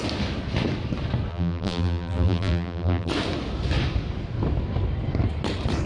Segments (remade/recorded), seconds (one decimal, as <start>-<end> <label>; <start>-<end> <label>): 0.0-1.3 recorded; 1.3-3.1 remade; 3.1-5.9 recorded